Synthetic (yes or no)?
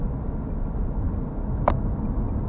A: no